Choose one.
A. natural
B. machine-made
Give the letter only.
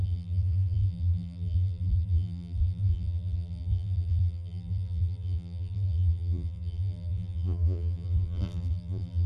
B